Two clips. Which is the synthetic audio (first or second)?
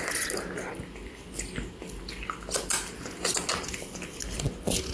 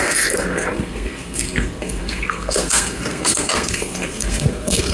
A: second